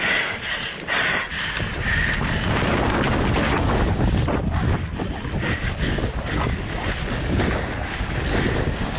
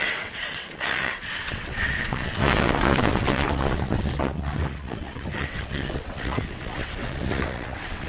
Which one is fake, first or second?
second